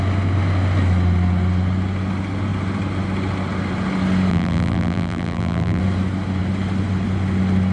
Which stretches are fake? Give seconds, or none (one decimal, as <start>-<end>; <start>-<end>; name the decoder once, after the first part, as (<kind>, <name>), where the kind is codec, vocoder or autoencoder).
4.3-5.8 (vocoder, BigVGAN v2)